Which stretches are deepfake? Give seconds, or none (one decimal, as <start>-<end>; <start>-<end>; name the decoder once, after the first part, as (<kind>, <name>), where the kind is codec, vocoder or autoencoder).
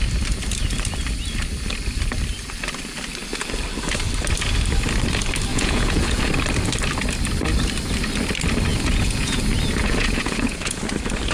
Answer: 5.5-6.3 (vocoder, Vocos); 8.7-9.4; 9.8-10.8